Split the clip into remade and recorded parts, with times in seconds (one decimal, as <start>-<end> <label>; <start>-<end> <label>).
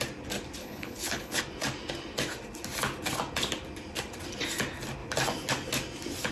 0.0-0.6 recorded; 0.6-1.4 remade; 1.4-6.3 recorded